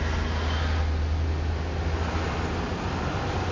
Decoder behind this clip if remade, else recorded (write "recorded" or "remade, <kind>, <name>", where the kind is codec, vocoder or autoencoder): recorded